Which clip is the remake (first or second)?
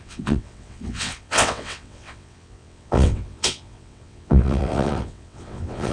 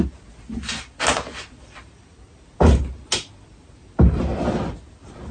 first